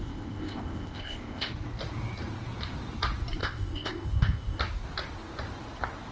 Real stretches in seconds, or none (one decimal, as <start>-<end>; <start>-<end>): 1.5-3.4; 4.6-6.1